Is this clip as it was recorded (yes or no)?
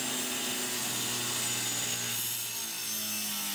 yes